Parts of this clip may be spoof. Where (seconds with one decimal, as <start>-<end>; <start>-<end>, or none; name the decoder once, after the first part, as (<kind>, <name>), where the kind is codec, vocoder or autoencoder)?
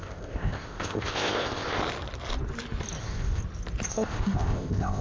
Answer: 0.0-1.8 (codec, ZipCodec); 3.0-3.4; 3.9-5.0